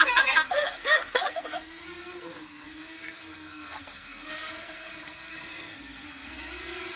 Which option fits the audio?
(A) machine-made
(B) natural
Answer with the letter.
A